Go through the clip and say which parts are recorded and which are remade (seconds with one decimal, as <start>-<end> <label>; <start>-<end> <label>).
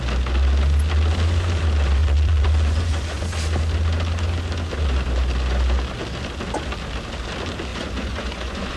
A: 0.0-2.0 recorded; 2.0-3.4 remade; 3.4-7.7 recorded; 7.7-8.8 remade